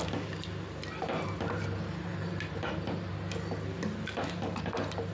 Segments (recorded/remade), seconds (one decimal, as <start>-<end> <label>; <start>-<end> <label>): 0.0-5.1 recorded